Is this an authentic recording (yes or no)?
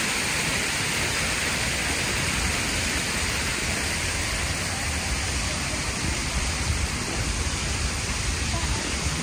yes